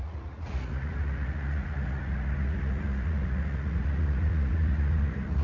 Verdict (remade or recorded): remade